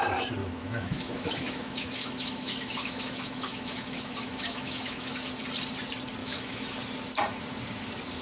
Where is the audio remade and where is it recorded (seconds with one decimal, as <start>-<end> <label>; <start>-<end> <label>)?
0.0-0.4 recorded; 0.4-5.3 remade; 5.3-6.2 recorded; 6.2-6.8 remade; 6.8-8.2 recorded